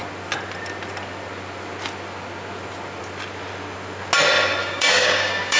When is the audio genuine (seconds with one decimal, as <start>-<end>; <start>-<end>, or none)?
0.0-4.6